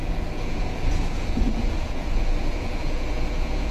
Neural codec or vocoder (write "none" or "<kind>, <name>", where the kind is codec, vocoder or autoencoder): vocoder, Vocos